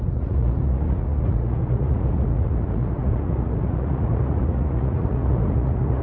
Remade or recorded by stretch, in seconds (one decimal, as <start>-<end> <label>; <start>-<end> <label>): 0.0-6.0 remade